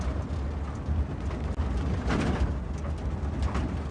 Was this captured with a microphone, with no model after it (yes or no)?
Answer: yes